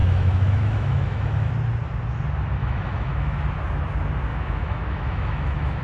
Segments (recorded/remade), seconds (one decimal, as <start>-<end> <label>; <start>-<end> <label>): 0.0-1.5 remade; 1.5-2.6 recorded; 2.6-3.4 remade; 3.4-4.3 recorded; 4.3-5.8 remade